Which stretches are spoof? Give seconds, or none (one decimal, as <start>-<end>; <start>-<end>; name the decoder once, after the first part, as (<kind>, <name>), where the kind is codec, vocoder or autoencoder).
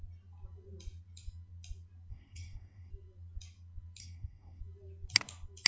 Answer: 2.1-2.9 (codec, SNAC); 4.0-4.6